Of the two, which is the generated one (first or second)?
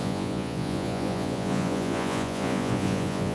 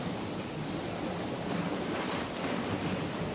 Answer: first